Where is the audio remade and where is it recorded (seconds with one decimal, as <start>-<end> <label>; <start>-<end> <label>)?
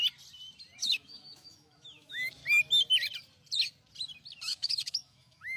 0.0-0.8 recorded; 0.8-2.4 remade; 2.4-4.4 recorded; 4.4-5.6 remade